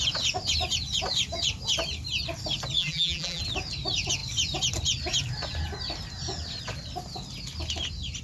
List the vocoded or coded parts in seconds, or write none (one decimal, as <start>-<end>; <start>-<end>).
2.8-3.4